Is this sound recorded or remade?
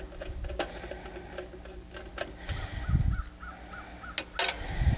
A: recorded